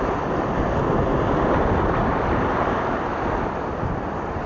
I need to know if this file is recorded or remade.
recorded